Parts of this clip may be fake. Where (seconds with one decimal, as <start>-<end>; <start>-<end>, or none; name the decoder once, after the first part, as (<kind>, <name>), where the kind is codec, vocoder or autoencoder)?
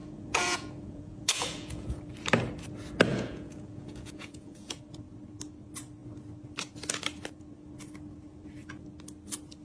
0.0-2.0 (vocoder, Vocos); 3.1-4.8